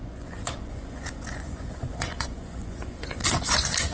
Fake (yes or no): yes